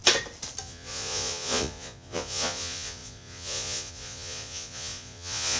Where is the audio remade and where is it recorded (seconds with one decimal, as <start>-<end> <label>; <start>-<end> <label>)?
0.0-0.6 recorded; 0.6-5.6 remade